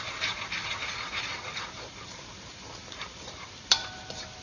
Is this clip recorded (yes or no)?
no